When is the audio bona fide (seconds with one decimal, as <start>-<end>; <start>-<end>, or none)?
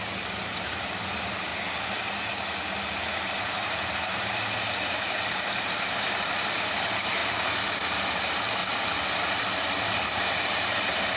1.5-3.0; 7.2-7.8; 8.6-9.8